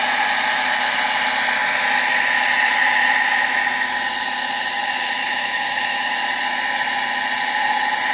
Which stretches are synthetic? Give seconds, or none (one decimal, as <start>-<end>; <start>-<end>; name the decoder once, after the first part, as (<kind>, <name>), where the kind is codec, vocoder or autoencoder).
5.2-6.1 (autoencoder, DAC-VAE)